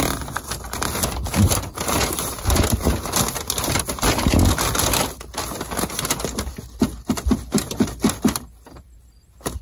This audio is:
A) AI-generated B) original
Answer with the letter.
B